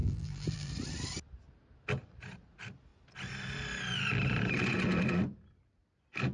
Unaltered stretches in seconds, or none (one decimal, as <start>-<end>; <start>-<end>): 0.7-6.3